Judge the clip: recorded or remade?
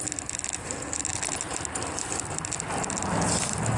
recorded